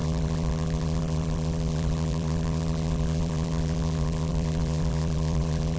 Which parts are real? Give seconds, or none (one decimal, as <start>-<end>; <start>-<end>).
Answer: none